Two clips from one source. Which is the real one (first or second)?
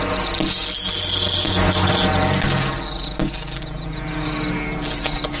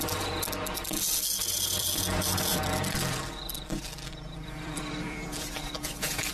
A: first